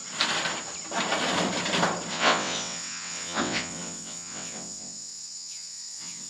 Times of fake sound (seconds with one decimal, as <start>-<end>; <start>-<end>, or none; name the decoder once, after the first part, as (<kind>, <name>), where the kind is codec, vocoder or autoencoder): 2.1-6.3 (vocoder, WaveNeXt)